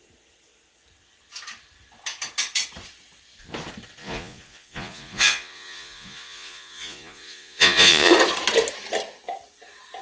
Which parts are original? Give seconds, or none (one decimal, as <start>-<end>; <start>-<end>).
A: 0.0-4.0; 8.1-10.0